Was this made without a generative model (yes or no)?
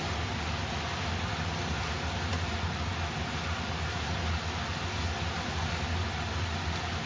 yes